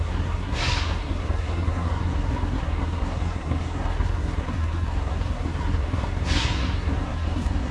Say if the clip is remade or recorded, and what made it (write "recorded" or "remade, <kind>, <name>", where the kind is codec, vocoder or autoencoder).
remade, codec, SNAC